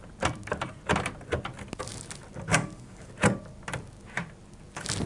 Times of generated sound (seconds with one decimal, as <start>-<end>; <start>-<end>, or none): 2.5-3.1